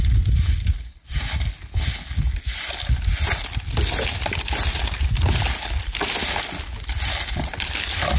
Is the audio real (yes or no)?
yes